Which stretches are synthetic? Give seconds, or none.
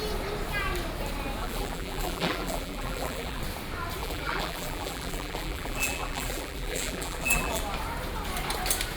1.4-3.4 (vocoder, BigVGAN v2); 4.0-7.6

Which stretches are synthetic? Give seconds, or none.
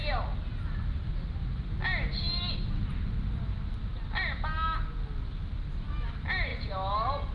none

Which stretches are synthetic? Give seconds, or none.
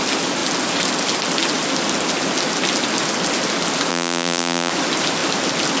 3.9-4.7 (vocoder, BigVGAN v2)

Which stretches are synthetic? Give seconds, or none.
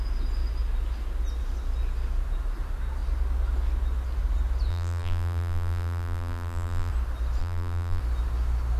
4.7-6.9 (vocoder, BigVGAN v2); 7.4-8.0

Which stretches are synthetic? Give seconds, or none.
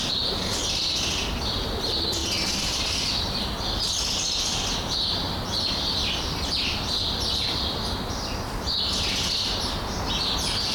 none